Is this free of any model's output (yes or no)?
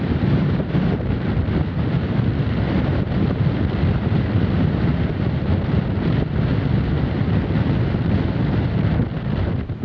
yes